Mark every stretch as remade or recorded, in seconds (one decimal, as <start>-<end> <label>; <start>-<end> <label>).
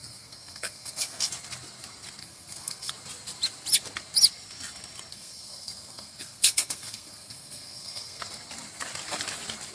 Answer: 0.0-1.3 remade; 1.3-2.2 recorded; 2.2-2.9 remade; 2.9-5.1 recorded; 5.1-8.2 remade; 8.2-9.7 recorded